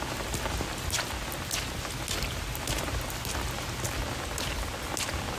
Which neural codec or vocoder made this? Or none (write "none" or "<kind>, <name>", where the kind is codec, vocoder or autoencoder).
none